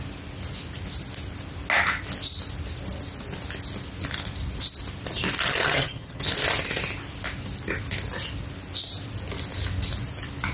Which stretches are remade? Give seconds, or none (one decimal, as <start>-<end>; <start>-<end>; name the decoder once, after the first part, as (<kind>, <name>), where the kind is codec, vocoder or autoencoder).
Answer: 5.6-6.2 (vocoder, HiFi-GAN)